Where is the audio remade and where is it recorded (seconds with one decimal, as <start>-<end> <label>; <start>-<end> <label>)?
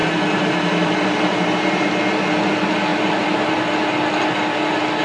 0.0-1.9 remade; 1.9-2.9 recorded; 2.9-3.8 remade; 3.8-5.0 recorded